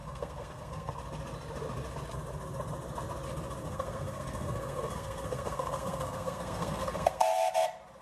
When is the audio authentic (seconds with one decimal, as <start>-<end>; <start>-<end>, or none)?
0.9-3.6; 7.5-8.0